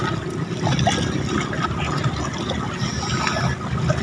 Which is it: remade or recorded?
recorded